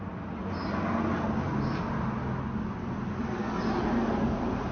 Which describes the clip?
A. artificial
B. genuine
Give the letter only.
B